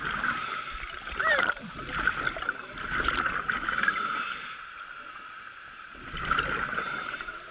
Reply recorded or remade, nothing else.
remade